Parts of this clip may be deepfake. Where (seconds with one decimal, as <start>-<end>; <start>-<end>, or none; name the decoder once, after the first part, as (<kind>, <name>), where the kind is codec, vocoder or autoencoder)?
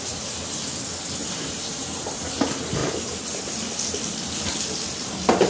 1.2-2.2 (vocoder, BigVGAN v2)